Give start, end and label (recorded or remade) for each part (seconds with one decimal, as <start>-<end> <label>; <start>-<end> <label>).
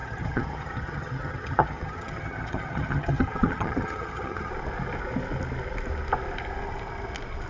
0.0-4.5 remade; 4.5-7.5 recorded